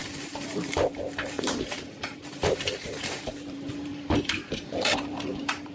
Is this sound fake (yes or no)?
yes